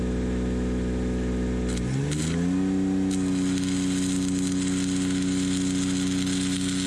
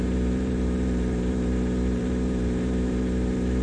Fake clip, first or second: second